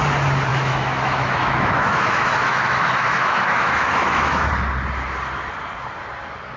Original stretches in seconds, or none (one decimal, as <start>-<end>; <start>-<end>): 0.0-0.5; 4.5-6.6